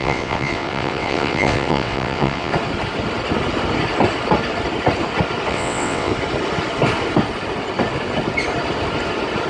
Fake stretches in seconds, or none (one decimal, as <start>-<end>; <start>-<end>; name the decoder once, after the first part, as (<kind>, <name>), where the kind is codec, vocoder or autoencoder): 0.0-2.5 (vocoder, WaveNeXt); 5.5-6.1